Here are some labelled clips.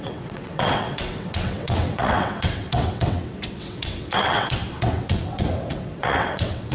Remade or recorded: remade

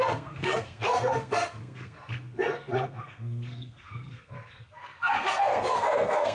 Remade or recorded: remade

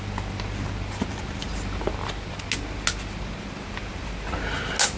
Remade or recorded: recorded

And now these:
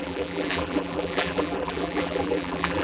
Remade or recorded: remade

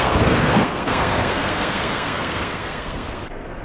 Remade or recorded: remade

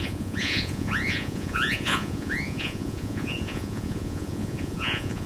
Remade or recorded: remade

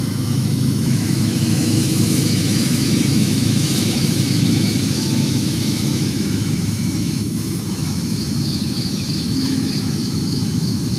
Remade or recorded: remade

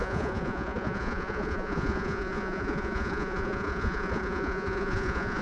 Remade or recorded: remade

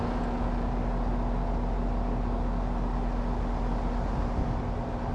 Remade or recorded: recorded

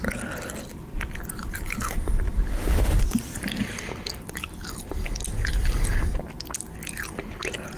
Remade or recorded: recorded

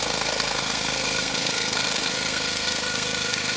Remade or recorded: remade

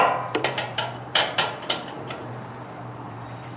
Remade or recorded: remade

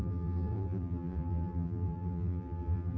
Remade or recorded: remade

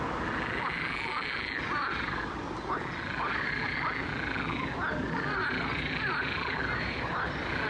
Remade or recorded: recorded